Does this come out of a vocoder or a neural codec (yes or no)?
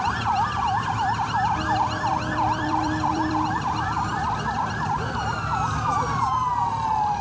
yes